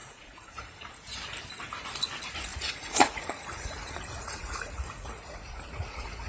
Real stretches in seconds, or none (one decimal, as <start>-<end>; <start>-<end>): 0.9-2.5